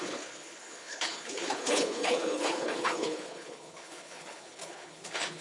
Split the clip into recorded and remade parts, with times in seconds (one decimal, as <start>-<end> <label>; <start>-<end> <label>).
0.0-5.4 remade